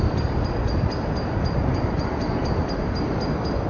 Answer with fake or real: real